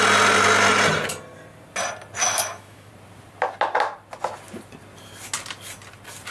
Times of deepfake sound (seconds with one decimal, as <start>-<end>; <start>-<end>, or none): 2.2-2.9